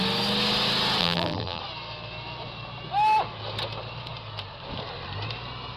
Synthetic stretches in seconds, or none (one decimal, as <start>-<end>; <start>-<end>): 1.0-1.6

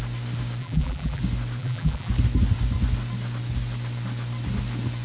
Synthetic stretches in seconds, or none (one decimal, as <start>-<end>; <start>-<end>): 0.6-1.2; 1.6-2.1

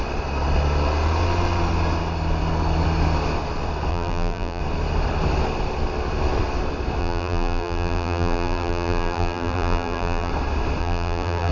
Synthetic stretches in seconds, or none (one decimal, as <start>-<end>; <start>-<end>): 3.9-4.6; 7.0-10.3; 10.8-11.5